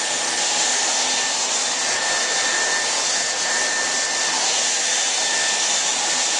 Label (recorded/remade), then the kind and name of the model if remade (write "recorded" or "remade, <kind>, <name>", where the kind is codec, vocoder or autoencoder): recorded